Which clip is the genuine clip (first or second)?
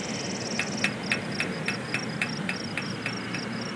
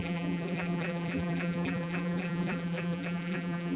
first